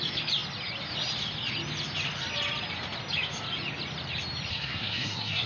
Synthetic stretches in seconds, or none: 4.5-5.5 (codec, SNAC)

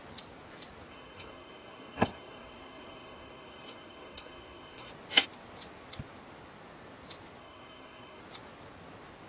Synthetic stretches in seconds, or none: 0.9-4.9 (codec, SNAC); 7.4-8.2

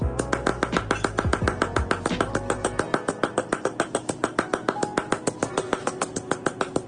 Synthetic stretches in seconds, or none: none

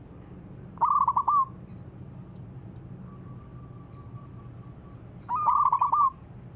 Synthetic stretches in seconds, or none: none